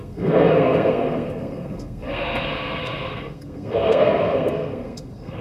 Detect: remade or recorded remade